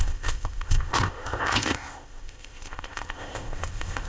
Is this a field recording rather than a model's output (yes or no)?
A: no